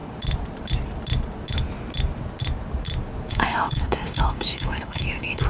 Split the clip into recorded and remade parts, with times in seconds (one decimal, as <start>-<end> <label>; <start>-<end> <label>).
0.0-3.3 recorded; 3.3-5.5 remade